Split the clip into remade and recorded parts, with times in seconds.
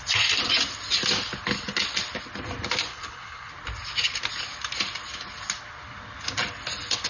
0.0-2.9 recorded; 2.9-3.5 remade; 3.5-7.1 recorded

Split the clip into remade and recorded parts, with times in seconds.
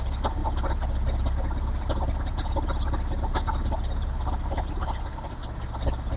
0.0-6.2 recorded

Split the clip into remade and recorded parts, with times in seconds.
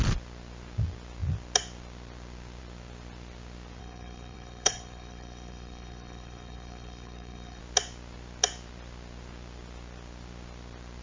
0.0-3.8 recorded; 3.8-7.6 remade; 7.6-11.0 recorded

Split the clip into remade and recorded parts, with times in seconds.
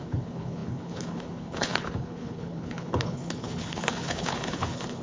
0.0-5.0 remade